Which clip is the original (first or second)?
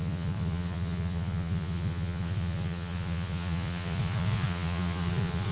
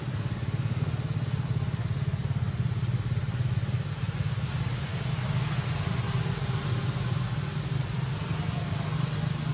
second